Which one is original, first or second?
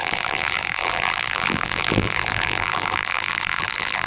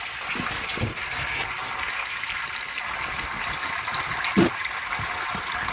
second